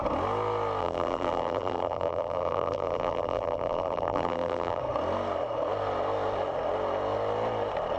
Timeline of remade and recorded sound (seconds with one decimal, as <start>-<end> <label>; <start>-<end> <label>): 0.0-0.8 recorded; 0.8-4.8 remade; 4.8-8.0 recorded